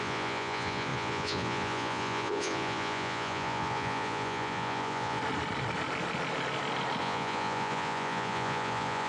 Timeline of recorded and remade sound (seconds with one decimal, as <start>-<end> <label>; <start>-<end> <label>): 0.0-5.2 remade; 5.2-7.0 recorded; 7.0-9.1 remade